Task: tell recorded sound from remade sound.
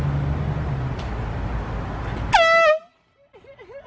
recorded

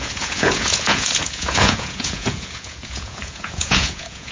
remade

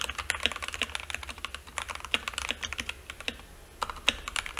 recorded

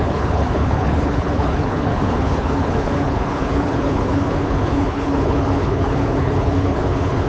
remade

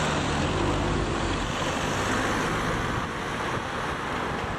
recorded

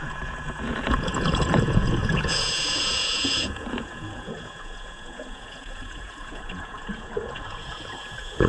remade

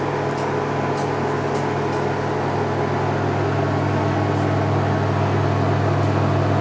recorded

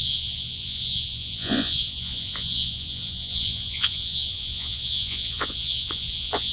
remade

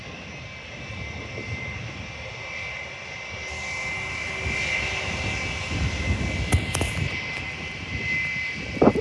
recorded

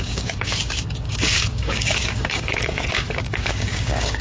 remade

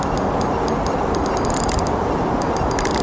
recorded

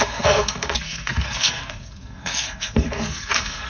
remade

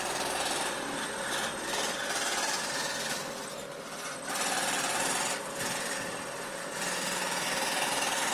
recorded